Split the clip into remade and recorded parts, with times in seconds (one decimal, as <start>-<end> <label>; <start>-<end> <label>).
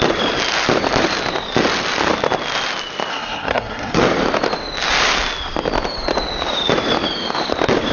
0.0-3.1 recorded; 3.1-4.0 remade; 4.0-7.9 recorded